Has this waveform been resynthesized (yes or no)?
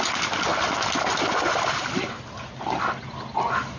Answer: no